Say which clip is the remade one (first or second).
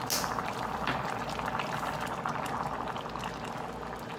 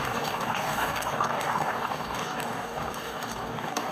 second